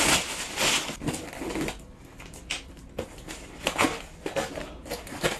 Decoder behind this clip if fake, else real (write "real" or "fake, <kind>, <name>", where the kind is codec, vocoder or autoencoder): real